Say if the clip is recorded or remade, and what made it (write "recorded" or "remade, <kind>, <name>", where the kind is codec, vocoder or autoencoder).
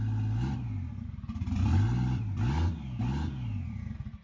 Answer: recorded